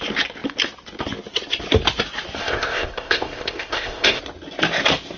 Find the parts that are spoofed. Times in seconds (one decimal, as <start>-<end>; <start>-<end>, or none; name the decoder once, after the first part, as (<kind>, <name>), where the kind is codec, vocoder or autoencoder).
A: 2.4-4.2 (codec, ZipCodec)